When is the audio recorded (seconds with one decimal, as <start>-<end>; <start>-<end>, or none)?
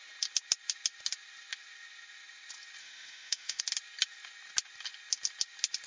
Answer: 0.0-2.8; 3.6-5.9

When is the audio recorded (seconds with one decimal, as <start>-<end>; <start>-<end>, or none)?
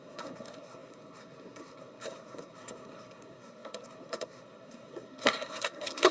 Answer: none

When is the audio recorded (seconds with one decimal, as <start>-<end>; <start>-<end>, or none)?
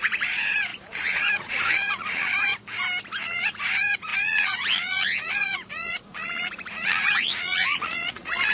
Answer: 2.5-3.2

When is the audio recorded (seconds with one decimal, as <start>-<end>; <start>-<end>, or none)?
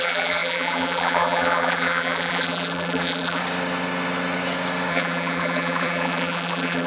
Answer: 3.4-4.9